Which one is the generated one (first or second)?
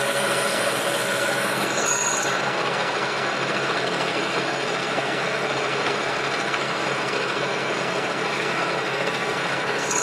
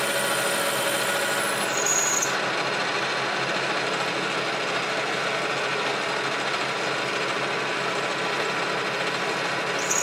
first